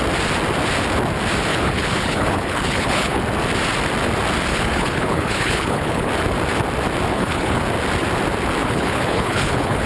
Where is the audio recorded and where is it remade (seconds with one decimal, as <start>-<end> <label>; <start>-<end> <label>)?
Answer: 0.0-1.5 recorded; 1.5-3.2 remade; 3.2-4.5 recorded; 4.5-6.1 remade; 6.1-7.1 recorded; 7.1-7.6 remade; 7.6-8.6 recorded; 8.6-9.9 remade